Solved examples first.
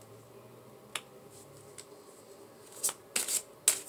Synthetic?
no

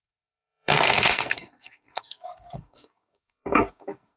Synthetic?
yes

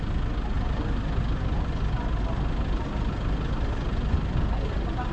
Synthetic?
no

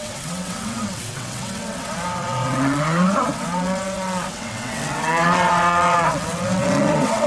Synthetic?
yes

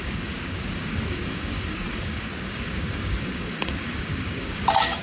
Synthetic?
yes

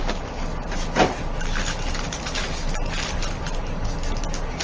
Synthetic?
no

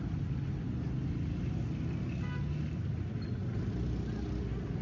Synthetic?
no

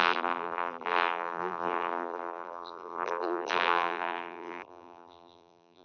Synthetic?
yes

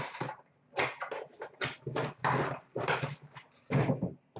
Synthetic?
no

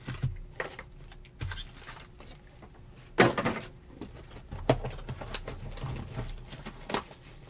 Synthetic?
no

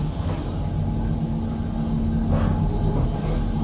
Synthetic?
no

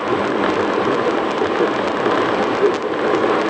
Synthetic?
no